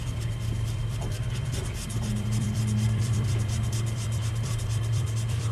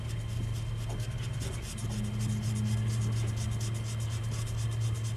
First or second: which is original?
second